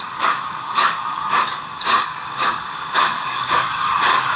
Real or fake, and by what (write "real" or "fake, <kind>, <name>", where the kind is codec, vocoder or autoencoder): fake, codec, DAC